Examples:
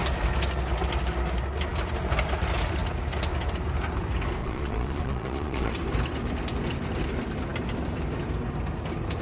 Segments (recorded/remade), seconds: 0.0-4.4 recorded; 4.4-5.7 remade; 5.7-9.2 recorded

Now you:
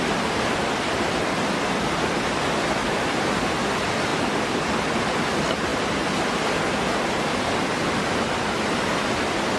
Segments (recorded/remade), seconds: 0.0-9.6 recorded

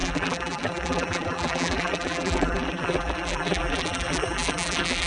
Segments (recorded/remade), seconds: 0.0-5.1 remade

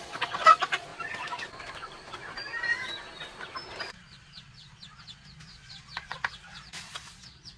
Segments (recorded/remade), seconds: 0.0-0.9 remade; 0.9-3.8 recorded; 3.8-7.6 remade